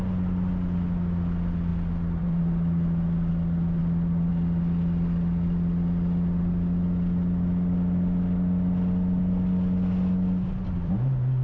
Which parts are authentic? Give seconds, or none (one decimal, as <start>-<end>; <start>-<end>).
0.0-11.4